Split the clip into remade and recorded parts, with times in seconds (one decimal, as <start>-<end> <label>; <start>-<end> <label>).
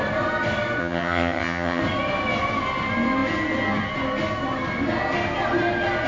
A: 0.0-0.8 recorded; 0.8-1.8 remade; 1.8-6.1 recorded